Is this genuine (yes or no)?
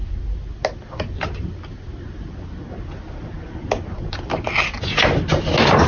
yes